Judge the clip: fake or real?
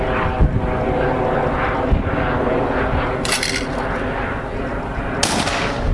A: real